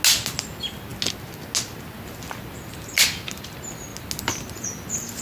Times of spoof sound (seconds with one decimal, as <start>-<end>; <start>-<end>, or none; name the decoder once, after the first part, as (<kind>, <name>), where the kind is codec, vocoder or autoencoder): none